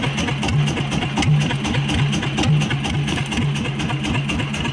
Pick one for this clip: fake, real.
real